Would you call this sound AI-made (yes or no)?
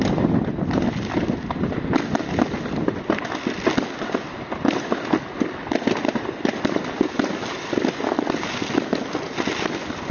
no